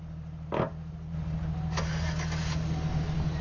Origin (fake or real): real